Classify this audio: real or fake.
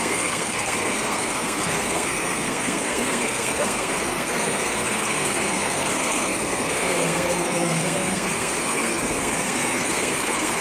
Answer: fake